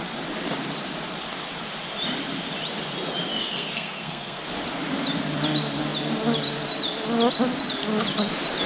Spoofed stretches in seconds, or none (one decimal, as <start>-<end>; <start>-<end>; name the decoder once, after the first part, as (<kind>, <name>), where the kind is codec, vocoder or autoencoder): 3.4-4.4 (codec, SNAC)